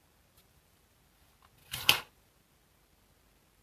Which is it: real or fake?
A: real